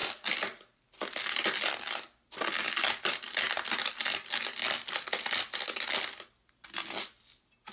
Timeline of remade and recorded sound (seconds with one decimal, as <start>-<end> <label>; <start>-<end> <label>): 0.0-7.7 recorded